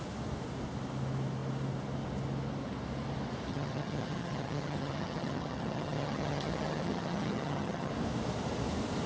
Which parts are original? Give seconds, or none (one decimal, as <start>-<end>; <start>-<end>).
0.0-3.5; 7.9-9.1